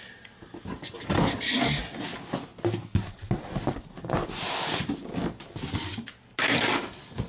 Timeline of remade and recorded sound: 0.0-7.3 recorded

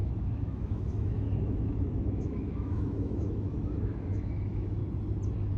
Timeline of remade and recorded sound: 0.0-4.8 remade; 4.8-5.6 recorded

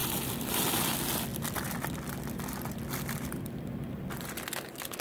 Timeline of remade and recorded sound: 0.0-0.8 remade; 0.8-1.3 recorded; 1.3-4.3 remade; 4.3-5.0 recorded

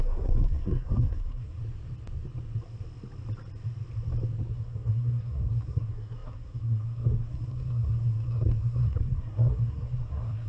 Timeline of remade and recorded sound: 0.0-1.6 remade; 1.6-4.5 recorded; 4.5-10.5 remade

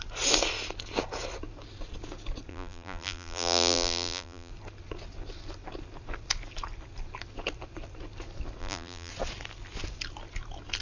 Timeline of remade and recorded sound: 0.0-2.5 recorded; 2.5-4.5 remade; 4.5-8.6 recorded; 8.6-9.1 remade; 9.1-10.8 recorded

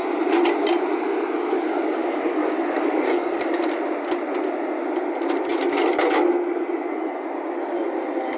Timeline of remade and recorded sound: 0.0-2.0 recorded; 2.0-3.4 remade; 3.4-8.4 recorded

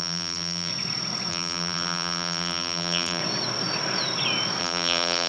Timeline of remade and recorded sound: 0.0-0.7 remade; 0.7-1.3 recorded; 1.3-3.2 remade; 3.2-4.6 recorded; 4.6-5.3 remade